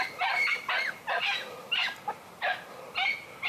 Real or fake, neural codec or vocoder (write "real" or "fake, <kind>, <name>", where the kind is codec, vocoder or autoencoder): real